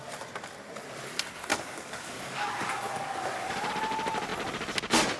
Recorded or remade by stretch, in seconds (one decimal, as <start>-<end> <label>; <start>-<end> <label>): 0.0-1.5 recorded; 1.5-3.7 remade; 3.7-5.2 recorded